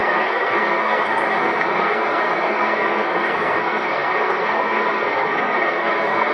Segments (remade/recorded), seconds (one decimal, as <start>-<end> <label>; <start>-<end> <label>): 0.0-6.3 remade